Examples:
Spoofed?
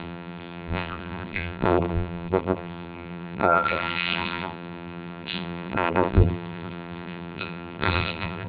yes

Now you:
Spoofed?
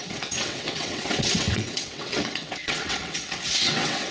yes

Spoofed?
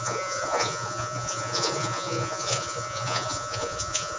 yes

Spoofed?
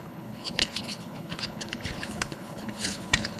yes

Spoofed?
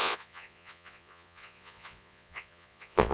yes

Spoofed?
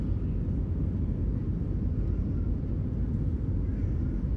no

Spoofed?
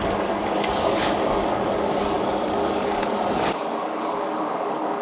yes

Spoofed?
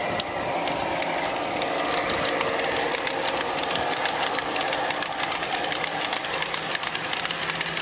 no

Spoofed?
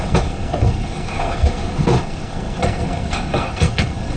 yes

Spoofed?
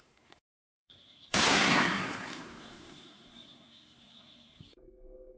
yes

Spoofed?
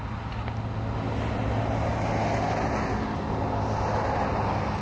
no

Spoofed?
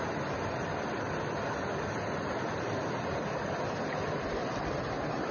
no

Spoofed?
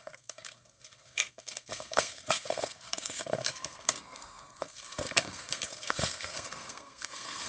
yes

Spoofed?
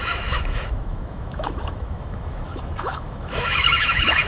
yes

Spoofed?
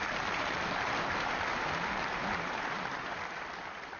no